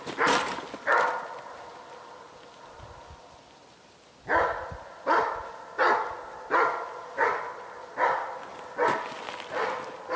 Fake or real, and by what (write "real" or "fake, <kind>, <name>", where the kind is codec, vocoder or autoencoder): real